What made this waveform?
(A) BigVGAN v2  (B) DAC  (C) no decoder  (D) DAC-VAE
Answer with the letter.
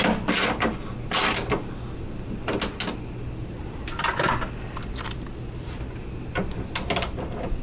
C